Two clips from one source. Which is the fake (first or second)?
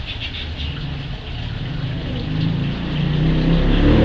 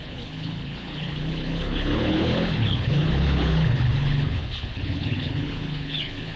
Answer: second